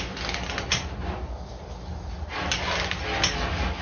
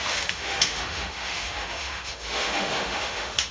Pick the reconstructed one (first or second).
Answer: second